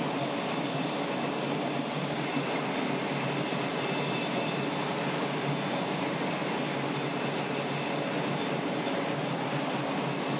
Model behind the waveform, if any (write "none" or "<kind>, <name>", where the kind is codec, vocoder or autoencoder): none